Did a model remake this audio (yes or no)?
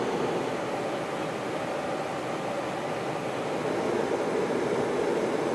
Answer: no